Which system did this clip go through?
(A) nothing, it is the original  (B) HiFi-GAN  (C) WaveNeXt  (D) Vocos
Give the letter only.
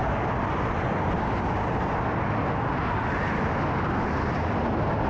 A